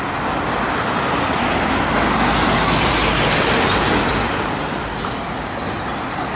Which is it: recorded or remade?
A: recorded